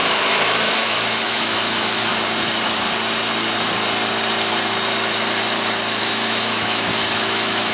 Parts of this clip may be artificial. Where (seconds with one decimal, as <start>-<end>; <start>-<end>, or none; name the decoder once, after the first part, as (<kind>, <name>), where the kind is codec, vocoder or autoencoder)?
0.0-2.1 (autoencoder, DAC-VAE); 6.0-7.7